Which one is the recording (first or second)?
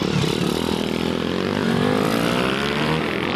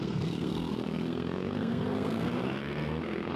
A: first